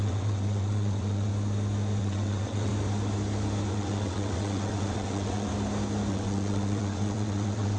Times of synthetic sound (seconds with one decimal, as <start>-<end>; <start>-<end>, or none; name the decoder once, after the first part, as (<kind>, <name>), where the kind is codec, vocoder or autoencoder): 0.0-1.3 (vocoder, WaveNeXt); 2.0-2.7; 3.7-5.5; 6.1-7.8